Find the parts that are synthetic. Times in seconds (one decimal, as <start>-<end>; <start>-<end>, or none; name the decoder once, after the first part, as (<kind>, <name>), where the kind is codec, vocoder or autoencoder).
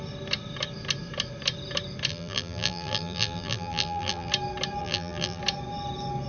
2.1-4.3 (vocoder, BigVGAN v2); 4.8-5.4